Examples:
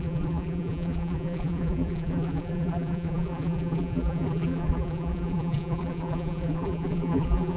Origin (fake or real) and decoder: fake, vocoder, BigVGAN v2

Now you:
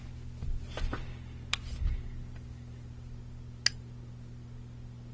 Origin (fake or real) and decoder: real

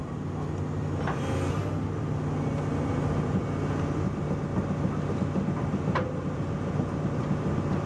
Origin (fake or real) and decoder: real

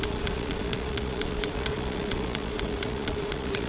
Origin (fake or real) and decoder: fake, vocoder, Vocos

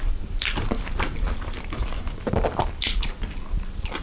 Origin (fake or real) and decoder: fake, vocoder, BigVGAN v2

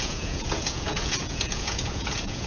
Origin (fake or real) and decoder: fake, vocoder, Vocos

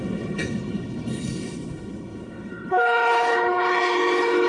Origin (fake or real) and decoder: fake, codec, HILCodec